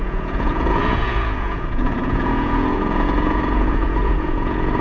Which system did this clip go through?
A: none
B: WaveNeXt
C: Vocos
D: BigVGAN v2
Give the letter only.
C